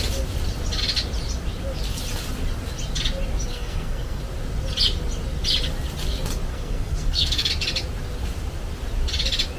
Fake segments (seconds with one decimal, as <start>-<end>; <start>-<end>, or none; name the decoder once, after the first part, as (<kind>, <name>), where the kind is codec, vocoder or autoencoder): 3.5-4.2 (codec, SNAC); 6.5-7.5